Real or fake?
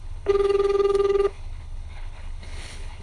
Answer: fake